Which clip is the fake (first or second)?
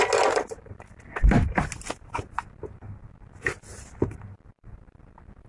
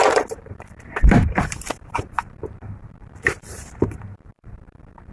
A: second